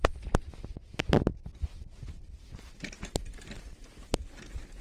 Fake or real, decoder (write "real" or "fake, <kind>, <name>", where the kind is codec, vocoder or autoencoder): real